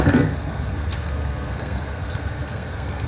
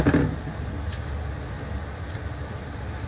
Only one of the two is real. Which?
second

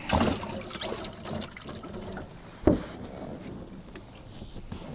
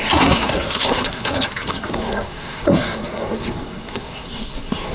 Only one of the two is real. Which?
first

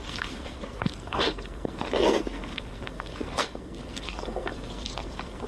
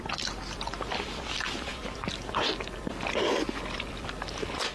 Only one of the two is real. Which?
second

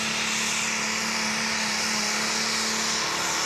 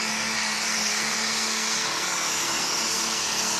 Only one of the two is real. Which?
first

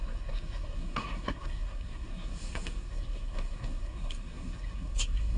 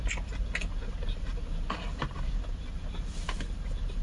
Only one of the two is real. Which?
second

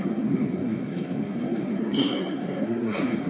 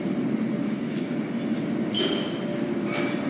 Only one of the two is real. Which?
second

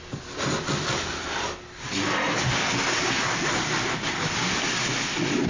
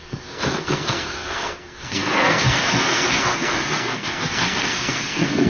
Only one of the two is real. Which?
first